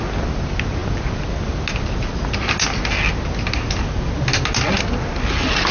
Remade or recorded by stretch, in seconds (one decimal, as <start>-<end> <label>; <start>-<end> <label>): 0.0-5.7 recorded